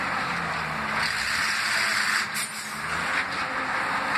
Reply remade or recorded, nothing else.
recorded